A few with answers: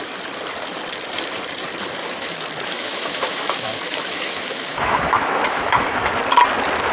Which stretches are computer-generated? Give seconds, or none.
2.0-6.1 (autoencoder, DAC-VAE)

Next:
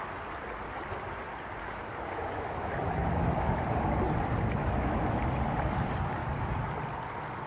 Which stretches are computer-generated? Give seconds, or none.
1.6-3.6 (autoencoder, DAC-VAE); 4.6-5.2

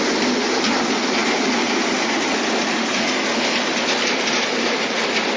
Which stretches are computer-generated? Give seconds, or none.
none